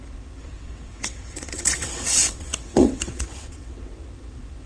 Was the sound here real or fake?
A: fake